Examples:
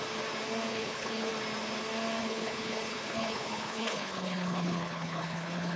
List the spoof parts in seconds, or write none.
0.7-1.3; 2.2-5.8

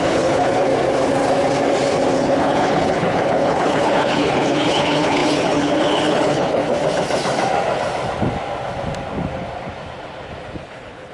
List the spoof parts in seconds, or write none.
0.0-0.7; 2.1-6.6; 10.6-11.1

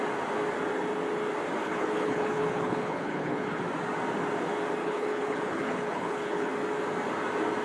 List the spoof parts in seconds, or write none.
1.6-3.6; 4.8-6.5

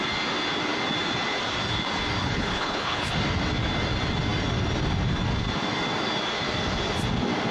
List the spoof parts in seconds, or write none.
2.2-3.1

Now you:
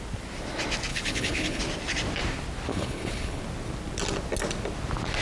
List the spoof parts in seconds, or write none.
0.9-1.6; 2.7-3.4

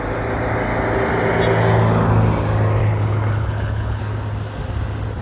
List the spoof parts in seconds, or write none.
2.8-4.0

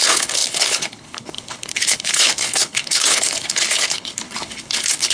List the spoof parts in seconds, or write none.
0.0-5.1